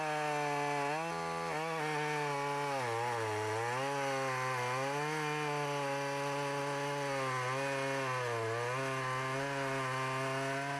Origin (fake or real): real